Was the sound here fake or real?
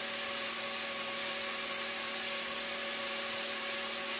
real